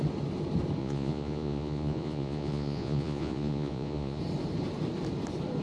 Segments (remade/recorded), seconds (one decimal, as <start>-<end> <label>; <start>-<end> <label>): 0.0-0.8 recorded; 0.8-4.2 remade; 4.2-5.6 recorded